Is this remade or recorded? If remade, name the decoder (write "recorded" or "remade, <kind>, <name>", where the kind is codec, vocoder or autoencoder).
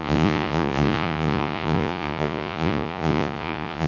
remade, vocoder, Vocos